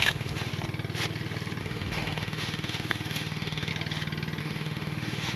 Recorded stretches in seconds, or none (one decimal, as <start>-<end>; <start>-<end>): 0.5-1.6; 3.7-4.4

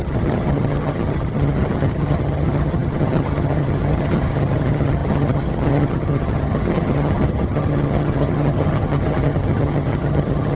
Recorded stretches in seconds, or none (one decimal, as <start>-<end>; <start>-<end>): none

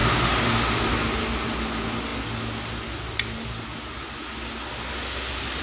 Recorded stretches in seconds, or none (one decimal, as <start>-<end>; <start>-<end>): 0.0-5.6

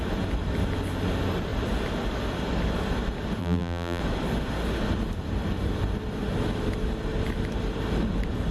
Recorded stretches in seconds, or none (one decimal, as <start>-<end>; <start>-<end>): 0.0-3.4; 4.0-8.5